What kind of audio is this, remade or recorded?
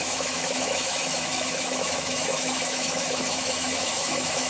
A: remade